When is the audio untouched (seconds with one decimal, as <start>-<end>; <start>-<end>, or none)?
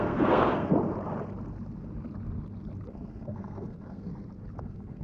0.7-2.9; 4.1-4.6